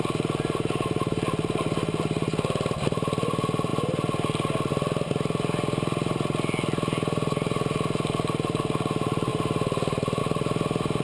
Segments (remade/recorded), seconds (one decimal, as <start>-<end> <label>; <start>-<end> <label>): 0.0-11.0 recorded